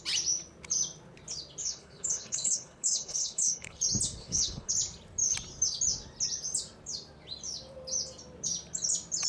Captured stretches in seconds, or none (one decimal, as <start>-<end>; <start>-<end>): 0.0-1.6; 3.8-4.2; 4.7-9.3